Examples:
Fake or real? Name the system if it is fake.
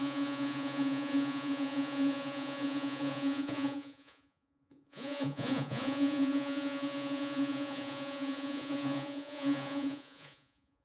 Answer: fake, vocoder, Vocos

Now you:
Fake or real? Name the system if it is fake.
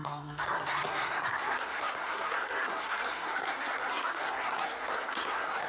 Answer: fake, codec, SNAC